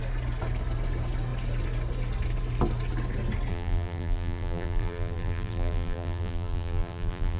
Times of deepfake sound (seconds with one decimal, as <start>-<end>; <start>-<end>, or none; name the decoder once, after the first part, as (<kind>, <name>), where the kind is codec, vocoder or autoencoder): 3.5-7.4 (vocoder, BigVGAN v2)